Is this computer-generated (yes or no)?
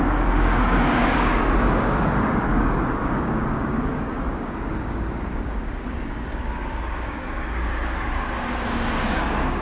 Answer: yes